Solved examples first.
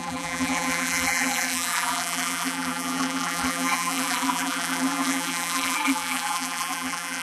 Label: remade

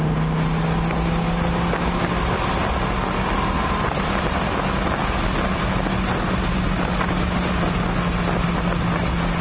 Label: recorded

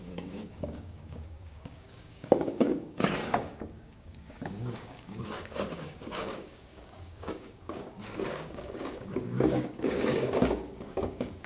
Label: remade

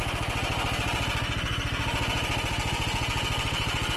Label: recorded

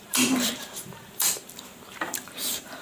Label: remade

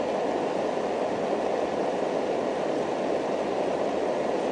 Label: recorded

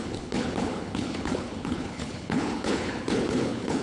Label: remade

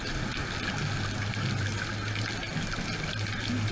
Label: recorded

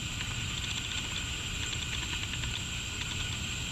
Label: recorded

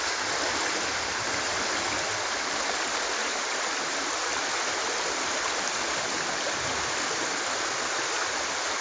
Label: recorded